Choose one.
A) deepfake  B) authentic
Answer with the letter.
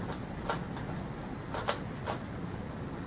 B